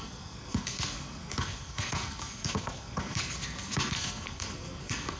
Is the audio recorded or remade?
remade